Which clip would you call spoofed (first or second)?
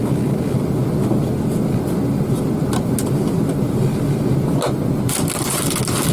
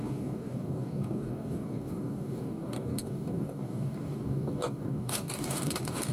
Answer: second